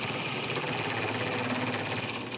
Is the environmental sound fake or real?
real